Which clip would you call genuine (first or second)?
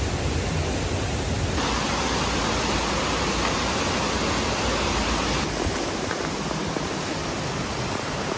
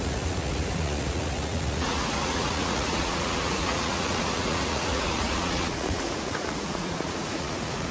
first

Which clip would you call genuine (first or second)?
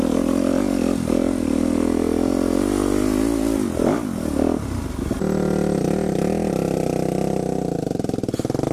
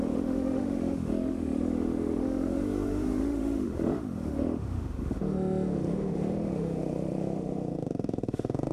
first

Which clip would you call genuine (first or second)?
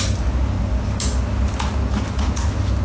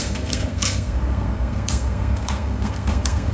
first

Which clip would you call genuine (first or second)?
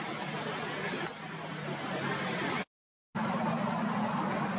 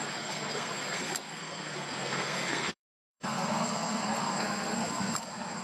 first